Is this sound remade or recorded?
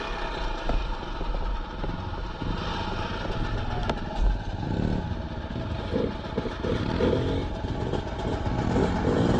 recorded